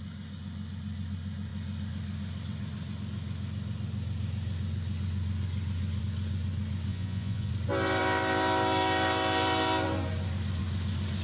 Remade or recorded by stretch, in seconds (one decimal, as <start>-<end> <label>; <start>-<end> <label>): 0.0-6.9 recorded; 6.9-7.5 remade; 7.5-11.2 recorded